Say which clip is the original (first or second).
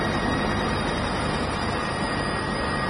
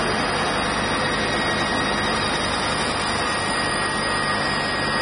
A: second